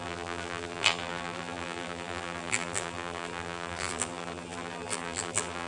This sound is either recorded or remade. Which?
remade